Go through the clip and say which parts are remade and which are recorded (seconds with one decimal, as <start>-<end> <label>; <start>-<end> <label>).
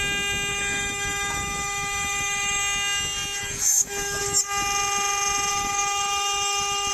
0.0-0.5 recorded; 0.5-2.6 remade; 2.6-3.4 recorded; 3.4-4.2 remade; 4.2-5.5 recorded; 5.5-6.9 remade